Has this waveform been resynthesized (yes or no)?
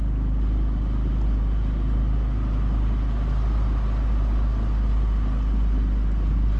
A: no